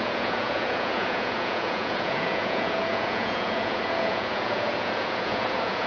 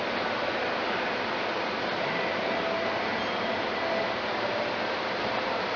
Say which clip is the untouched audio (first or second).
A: second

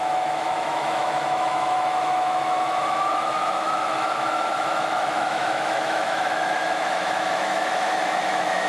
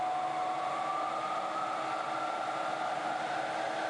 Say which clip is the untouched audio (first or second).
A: second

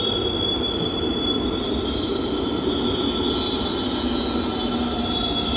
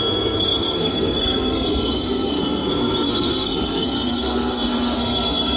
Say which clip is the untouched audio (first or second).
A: first